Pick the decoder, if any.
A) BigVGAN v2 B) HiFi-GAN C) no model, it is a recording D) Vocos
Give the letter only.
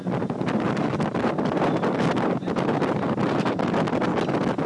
C